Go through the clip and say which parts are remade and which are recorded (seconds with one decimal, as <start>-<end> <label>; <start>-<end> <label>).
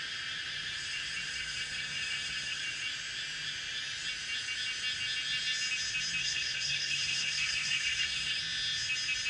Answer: 0.0-1.3 recorded; 1.3-2.6 remade; 2.6-6.2 recorded; 6.2-8.4 remade; 8.4-9.3 recorded